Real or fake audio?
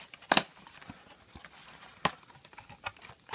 real